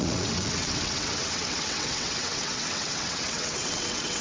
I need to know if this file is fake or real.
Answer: fake